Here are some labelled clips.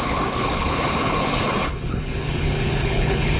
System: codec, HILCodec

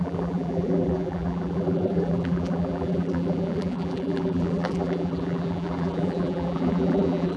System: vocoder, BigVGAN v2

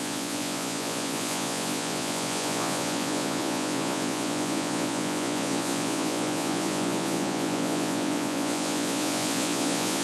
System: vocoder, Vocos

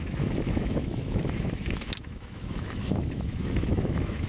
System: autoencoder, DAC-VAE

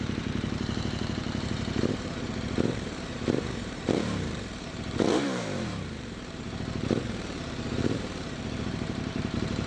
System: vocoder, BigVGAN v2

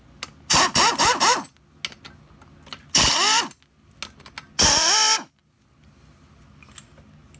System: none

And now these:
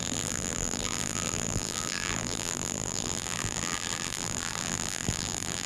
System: vocoder, BigVGAN v2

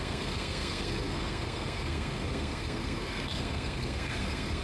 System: codec, SNAC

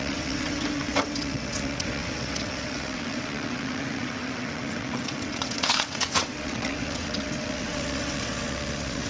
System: vocoder, WaveNeXt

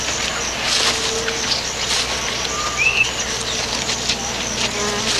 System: none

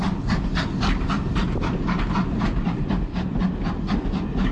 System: none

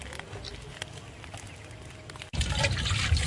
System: none